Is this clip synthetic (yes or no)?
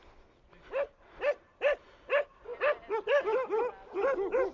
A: no